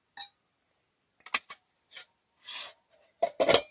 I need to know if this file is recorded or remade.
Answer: recorded